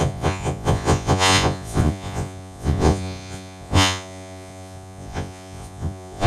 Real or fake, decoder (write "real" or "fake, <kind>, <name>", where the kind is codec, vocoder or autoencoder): fake, vocoder, Vocos